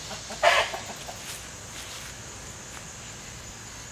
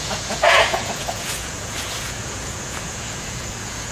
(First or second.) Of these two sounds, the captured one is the first